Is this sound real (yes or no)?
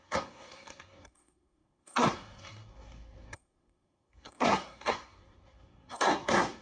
no